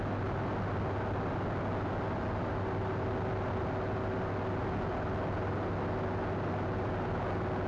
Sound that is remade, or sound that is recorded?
recorded